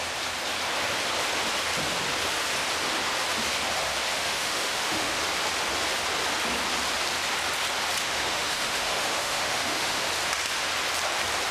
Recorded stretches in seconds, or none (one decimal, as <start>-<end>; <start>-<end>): 0.0-4.1; 5.2-8.0; 10.1-11.5